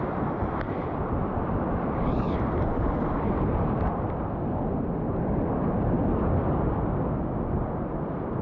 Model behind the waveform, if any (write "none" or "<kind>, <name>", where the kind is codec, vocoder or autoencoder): none